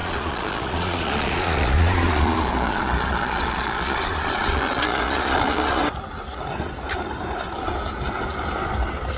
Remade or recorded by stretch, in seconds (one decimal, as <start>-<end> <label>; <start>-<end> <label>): 0.0-5.8 remade; 5.8-9.2 recorded